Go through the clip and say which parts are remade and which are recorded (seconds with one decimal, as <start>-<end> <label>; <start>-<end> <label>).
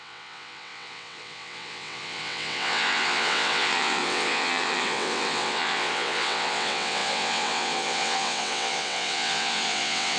0.0-10.2 remade